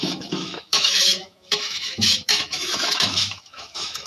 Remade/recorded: remade